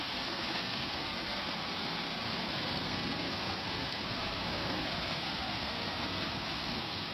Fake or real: fake